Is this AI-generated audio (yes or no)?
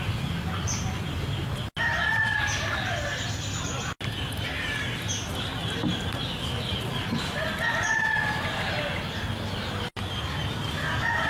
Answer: no